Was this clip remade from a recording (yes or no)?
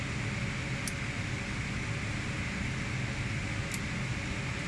no